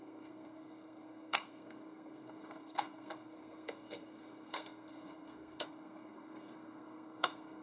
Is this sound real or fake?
fake